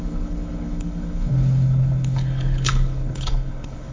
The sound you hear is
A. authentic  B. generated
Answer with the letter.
B